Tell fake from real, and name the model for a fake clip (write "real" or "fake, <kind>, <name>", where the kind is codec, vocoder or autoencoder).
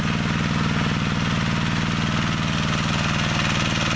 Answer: real